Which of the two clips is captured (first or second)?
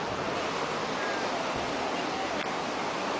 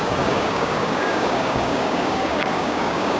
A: first